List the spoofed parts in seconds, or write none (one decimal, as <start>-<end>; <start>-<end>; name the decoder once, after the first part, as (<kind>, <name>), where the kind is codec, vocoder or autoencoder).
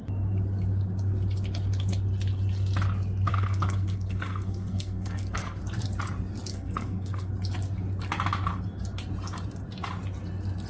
3.3-5.6 (codec, SNAC); 6.5-7.3